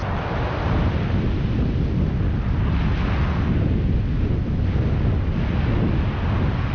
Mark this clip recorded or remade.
recorded